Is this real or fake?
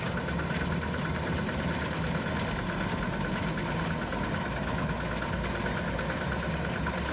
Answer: real